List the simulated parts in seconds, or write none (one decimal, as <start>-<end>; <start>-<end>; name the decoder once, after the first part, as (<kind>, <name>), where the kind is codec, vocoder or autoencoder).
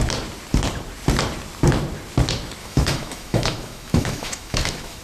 2.6-5.0 (autoencoder, DAC-VAE)